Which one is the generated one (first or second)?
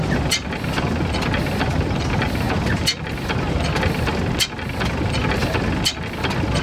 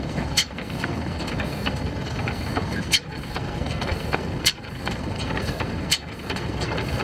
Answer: second